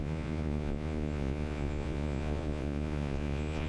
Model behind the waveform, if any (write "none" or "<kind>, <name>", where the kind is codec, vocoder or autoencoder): vocoder, Vocos